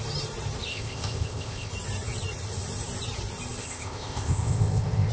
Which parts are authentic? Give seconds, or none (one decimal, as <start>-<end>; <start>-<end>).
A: 0.0-0.7; 1.7-3.6